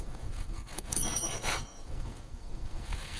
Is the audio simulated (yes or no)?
yes